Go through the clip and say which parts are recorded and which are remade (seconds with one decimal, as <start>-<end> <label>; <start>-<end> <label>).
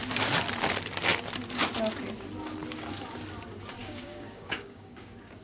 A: 0.0-3.8 recorded; 3.8-5.4 remade